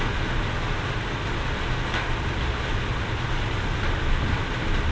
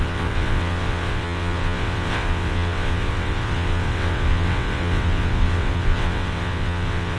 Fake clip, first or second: second